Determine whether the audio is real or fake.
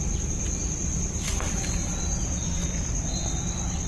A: real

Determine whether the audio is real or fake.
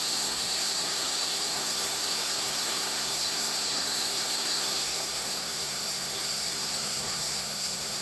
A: fake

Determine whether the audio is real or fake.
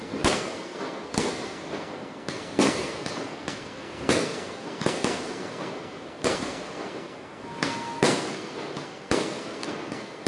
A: fake